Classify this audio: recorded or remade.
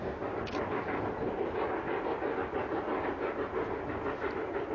recorded